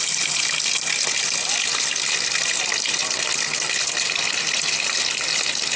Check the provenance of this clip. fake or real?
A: real